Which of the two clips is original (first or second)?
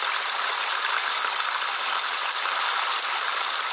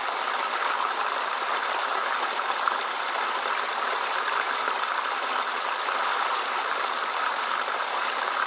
first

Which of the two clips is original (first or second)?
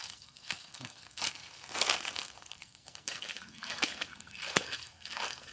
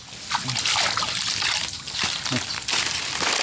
second